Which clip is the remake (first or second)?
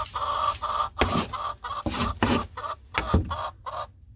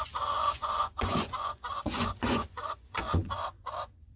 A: second